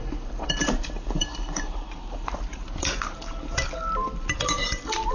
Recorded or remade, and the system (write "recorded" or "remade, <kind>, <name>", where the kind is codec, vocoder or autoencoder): remade, vocoder, BigVGAN v2